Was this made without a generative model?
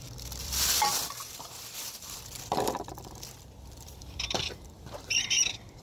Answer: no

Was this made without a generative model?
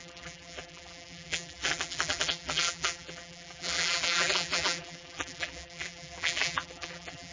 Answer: no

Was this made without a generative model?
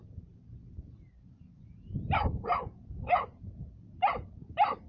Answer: no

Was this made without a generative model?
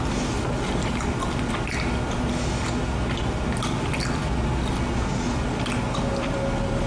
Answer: yes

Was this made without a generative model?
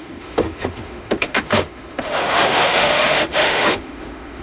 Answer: no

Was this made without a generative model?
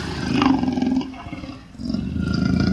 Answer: yes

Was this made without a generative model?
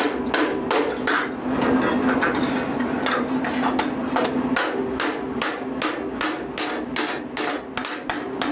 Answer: yes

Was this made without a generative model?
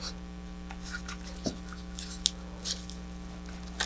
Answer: yes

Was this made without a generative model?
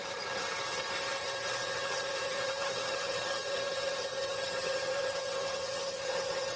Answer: no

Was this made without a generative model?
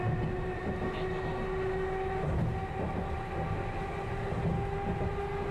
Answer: yes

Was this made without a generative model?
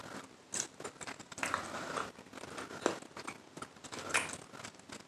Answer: yes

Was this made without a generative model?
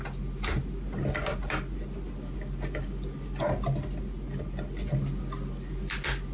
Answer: yes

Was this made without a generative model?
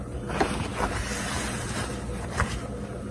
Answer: yes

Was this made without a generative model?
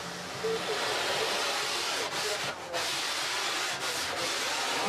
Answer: yes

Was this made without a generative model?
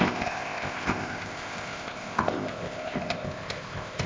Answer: no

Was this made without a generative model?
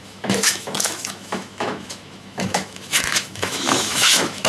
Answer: no